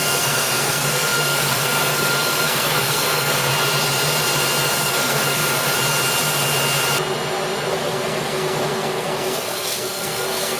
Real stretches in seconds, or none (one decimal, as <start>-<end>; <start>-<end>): 3.5-4.8; 5.4-7.7